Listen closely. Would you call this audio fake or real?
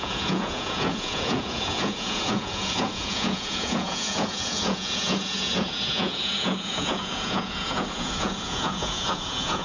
fake